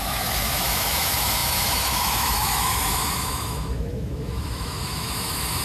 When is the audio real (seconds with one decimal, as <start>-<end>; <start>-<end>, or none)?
none